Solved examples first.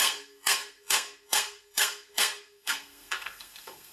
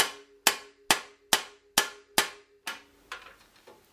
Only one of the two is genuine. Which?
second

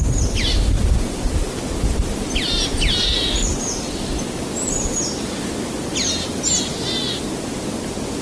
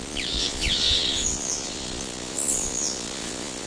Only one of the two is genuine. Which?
first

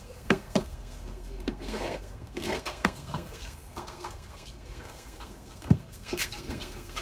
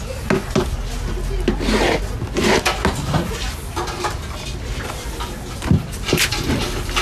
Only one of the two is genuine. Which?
second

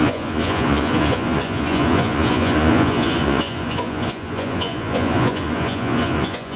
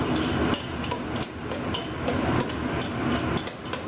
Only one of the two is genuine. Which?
second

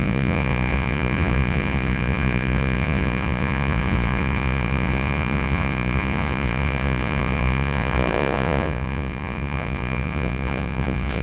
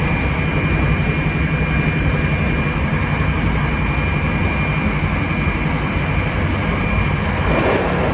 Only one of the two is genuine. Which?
second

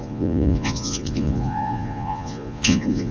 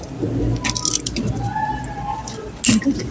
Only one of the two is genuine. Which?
second